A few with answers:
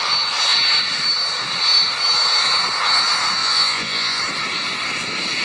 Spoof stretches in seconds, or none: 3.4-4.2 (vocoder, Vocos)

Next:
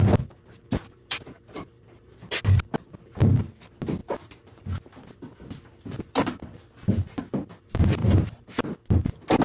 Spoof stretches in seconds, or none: none

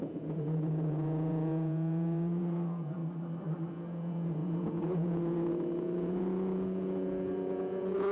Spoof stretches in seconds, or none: 0.0-3.0 (vocoder, Vocos); 3.7-8.1

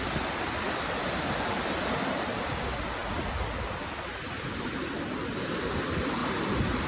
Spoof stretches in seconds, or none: none